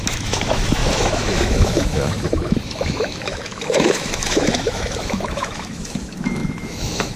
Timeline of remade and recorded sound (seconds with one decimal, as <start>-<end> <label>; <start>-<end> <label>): 0.0-7.2 remade